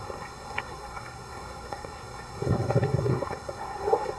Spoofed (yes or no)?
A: yes